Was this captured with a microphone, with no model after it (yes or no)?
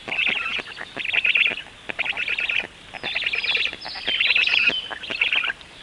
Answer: yes